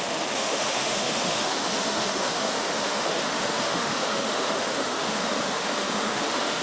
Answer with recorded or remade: remade